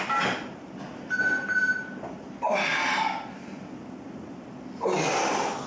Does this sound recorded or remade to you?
recorded